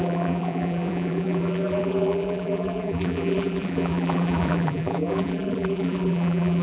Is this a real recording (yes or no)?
no